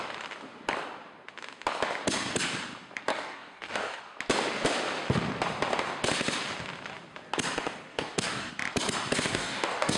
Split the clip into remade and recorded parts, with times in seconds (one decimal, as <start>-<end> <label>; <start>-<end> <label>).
0.0-3.1 recorded; 3.1-4.0 remade; 4.0-7.9 recorded; 7.9-8.5 remade; 8.5-9.3 recorded; 9.3-10.0 remade